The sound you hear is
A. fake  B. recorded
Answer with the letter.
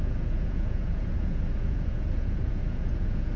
A